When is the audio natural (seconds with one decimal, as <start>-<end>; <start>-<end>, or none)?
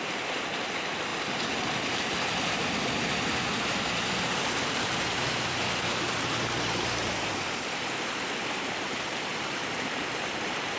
0.0-10.8